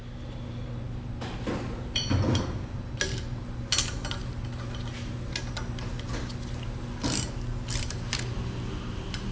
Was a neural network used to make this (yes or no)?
no